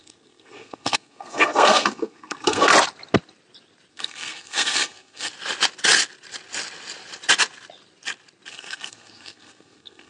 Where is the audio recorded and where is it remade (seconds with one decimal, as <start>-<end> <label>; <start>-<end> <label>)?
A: 0.0-2.7 remade; 2.7-3.9 recorded; 3.9-5.3 remade; 5.3-8.5 recorded; 8.5-10.1 remade